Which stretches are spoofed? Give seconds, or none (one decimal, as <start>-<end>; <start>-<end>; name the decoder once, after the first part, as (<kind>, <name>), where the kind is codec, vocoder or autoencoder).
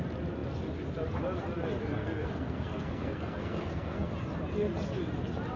2.0-4.1 (codec, SNAC)